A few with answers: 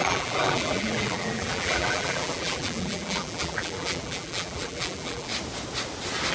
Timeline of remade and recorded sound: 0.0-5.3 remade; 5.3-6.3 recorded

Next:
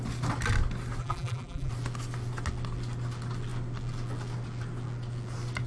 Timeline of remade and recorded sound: 0.0-1.0 recorded; 1.0-1.7 remade; 1.7-5.7 recorded